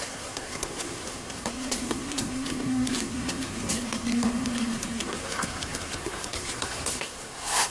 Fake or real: fake